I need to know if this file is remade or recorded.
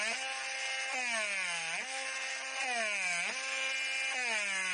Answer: recorded